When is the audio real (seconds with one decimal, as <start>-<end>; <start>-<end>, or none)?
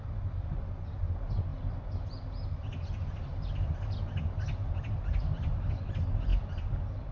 0.0-7.1